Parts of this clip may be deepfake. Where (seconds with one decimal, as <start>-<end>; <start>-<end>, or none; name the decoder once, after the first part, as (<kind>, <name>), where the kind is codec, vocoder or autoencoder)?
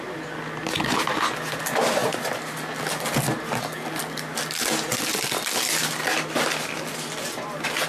2.0-2.8 (vocoder, BigVGAN v2)